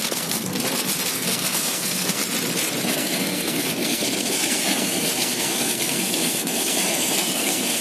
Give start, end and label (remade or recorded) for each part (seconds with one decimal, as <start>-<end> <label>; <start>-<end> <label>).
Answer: 0.0-0.5 remade; 0.5-1.1 recorded; 1.1-2.2 remade; 2.2-2.9 recorded; 2.9-7.8 remade